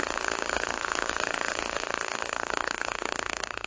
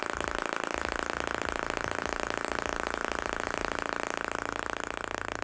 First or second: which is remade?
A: first